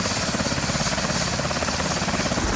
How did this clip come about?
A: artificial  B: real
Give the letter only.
B